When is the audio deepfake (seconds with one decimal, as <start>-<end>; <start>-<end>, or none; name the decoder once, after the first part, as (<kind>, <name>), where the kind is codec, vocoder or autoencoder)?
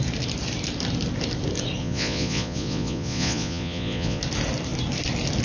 1.8-4.2 (vocoder, Vocos)